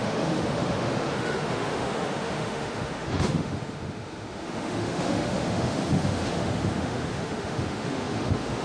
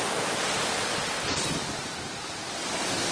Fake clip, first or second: first